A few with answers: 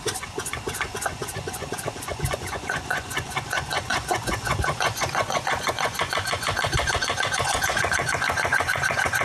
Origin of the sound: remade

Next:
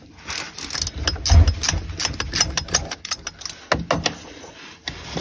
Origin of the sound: recorded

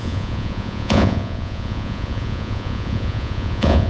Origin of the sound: remade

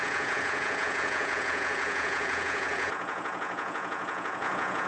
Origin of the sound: remade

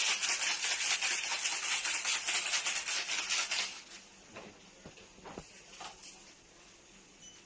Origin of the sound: recorded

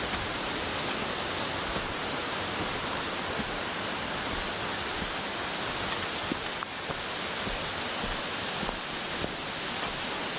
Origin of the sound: recorded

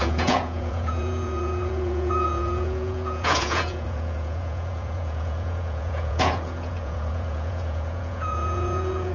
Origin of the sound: remade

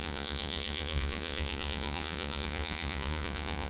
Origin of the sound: remade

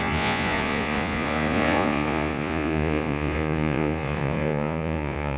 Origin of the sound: remade